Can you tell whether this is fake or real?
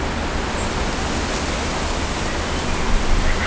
real